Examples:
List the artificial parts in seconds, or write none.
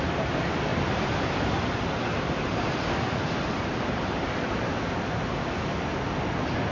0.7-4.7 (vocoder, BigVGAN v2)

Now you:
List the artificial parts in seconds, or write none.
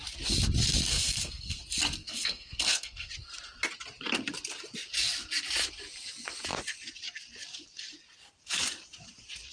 0.9-1.6 (codec, SNAC); 2.0-3.1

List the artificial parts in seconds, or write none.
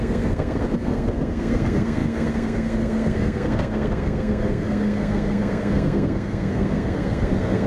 0.0-7.7 (codec, SNAC)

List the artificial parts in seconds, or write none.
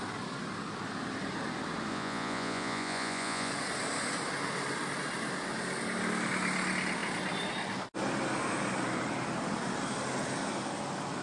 1.9-3.5 (vocoder, Vocos)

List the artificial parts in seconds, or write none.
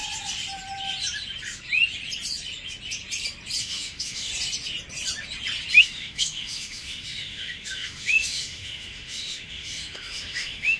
3.6-4.3 (autoencoder, DAC-VAE); 5.8-10.8